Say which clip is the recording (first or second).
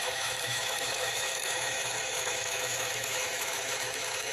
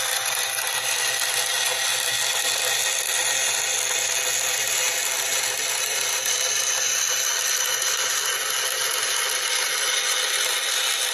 second